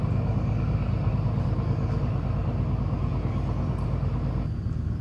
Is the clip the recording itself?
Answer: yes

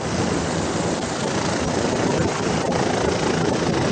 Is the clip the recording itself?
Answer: yes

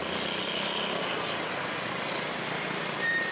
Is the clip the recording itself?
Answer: yes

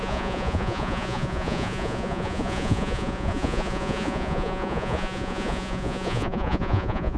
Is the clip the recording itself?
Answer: no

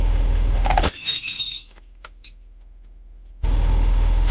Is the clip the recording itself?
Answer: no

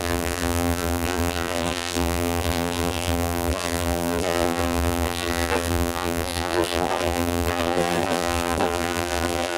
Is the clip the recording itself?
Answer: no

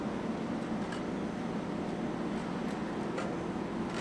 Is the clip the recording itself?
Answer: yes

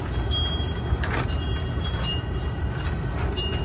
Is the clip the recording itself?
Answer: yes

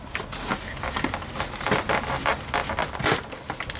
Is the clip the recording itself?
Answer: yes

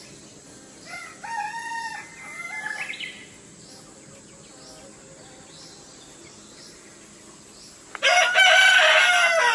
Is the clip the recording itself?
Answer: yes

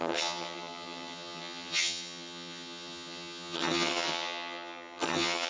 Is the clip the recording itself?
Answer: no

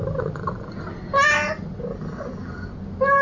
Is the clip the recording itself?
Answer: yes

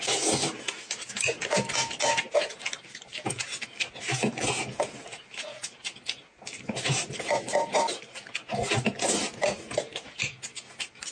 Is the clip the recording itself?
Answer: yes